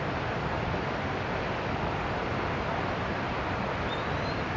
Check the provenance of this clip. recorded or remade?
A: recorded